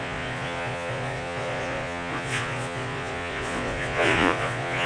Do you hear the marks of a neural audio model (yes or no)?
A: yes